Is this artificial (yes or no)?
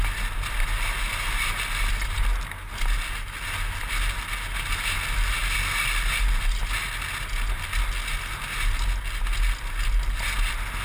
no